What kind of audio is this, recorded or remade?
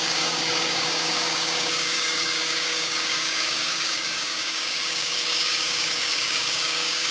remade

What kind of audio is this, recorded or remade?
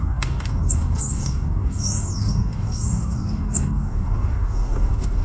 remade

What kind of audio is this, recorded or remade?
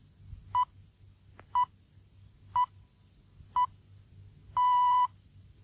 recorded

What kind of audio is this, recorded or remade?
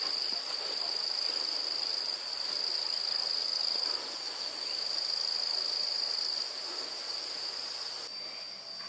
recorded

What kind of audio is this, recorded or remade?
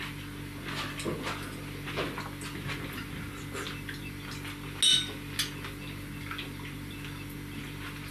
recorded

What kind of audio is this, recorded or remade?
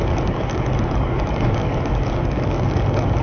remade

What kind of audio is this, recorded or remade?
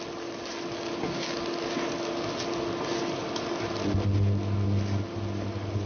recorded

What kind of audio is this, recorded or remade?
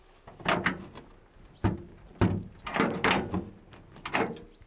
recorded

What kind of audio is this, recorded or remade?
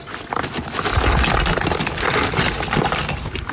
recorded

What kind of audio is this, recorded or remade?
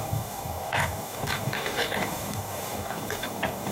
remade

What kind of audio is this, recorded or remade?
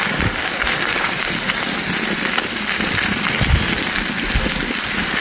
recorded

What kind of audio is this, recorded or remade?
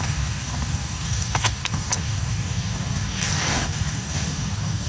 remade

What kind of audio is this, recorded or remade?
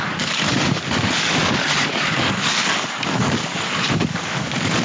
remade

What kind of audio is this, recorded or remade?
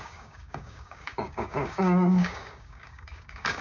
remade